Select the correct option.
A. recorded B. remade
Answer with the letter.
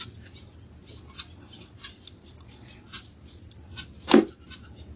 A